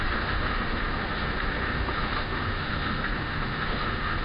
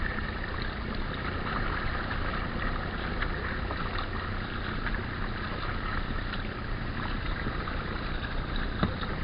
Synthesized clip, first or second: first